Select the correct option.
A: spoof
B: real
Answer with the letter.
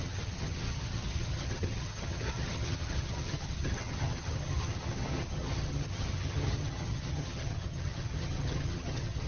A